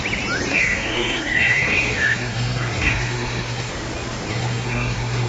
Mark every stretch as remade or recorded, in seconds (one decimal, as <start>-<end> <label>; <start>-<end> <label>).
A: 0.0-0.5 recorded; 0.5-3.7 remade; 3.7-4.3 recorded; 4.3-5.3 remade